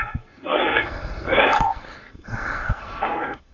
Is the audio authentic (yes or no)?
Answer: no